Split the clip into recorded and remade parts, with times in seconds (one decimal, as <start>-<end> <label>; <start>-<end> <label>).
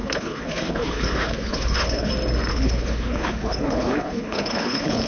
0.0-2.1 remade; 2.1-2.5 recorded; 2.5-5.1 remade